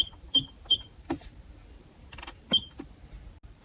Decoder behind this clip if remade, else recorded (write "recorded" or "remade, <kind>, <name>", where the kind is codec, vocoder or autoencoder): recorded